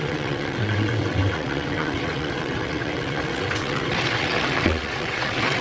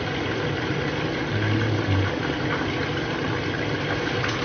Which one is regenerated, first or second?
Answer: first